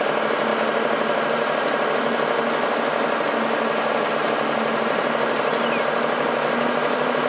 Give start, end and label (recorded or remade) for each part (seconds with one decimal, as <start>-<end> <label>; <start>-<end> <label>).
0.0-7.3 recorded